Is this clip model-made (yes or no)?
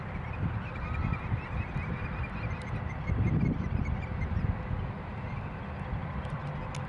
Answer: no